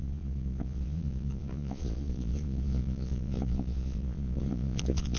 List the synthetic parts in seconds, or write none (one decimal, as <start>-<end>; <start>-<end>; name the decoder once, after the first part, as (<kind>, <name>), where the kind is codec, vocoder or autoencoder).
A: 0.0-5.2 (vocoder, Vocos)